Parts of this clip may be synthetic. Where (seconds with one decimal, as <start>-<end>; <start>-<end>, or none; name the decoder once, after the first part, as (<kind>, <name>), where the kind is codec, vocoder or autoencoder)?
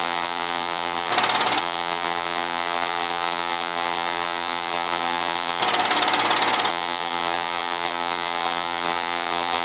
0.0-1.1 (vocoder, BigVGAN v2); 1.6-5.6; 6.7-9.6